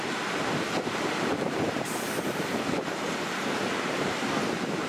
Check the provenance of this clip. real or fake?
fake